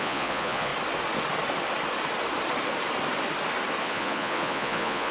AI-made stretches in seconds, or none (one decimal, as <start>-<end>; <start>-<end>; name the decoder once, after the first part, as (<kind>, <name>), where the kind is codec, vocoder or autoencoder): 0.0-0.7 (vocoder, Vocos); 3.8-5.1